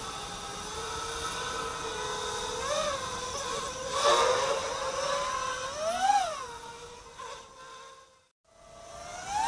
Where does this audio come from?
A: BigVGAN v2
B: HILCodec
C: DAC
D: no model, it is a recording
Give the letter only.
D